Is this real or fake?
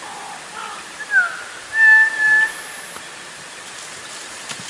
real